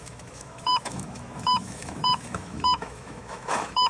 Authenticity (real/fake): fake